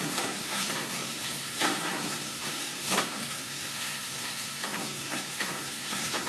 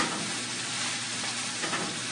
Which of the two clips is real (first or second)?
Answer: second